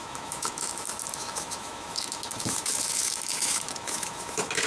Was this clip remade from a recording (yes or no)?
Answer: yes